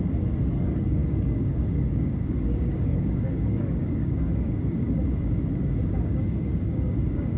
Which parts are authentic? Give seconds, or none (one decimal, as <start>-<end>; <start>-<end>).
0.0-0.6